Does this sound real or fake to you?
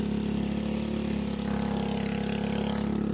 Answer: real